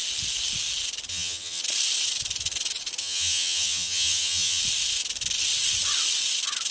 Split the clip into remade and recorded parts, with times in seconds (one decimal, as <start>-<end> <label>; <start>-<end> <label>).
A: 0.0-1.1 recorded; 1.1-1.6 remade; 1.6-3.0 recorded; 3.0-4.6 remade; 4.6-6.7 recorded